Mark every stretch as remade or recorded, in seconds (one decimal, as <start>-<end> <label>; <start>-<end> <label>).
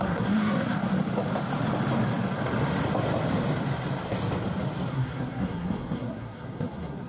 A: 0.0-0.8 remade; 0.8-4.9 recorded; 4.9-7.1 remade